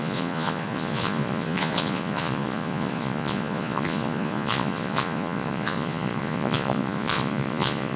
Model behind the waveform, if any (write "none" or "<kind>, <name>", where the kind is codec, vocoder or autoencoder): vocoder, Vocos